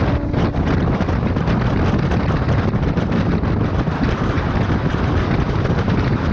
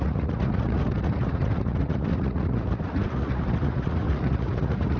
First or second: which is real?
first